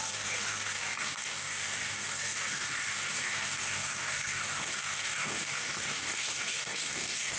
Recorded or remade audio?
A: remade